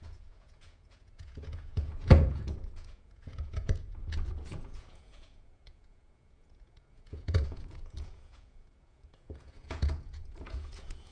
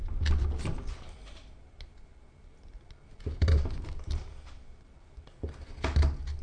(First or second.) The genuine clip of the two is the second